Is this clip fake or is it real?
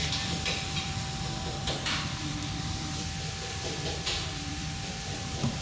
fake